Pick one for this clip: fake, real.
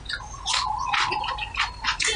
real